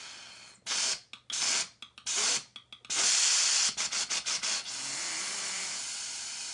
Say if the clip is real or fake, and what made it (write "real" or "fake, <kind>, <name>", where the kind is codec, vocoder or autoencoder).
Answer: real